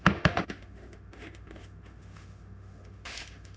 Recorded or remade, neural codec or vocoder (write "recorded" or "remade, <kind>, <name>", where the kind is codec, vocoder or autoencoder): remade, autoencoder, DAC-VAE